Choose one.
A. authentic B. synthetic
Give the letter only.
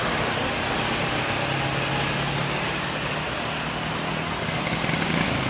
A